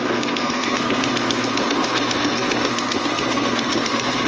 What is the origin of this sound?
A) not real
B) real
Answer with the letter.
A